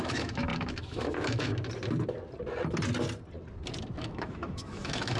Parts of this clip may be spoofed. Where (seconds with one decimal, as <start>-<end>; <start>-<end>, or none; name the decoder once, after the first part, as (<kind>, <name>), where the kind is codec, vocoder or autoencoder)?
0.0-1.5 (autoencoder, DAC-VAE); 4.0-5.2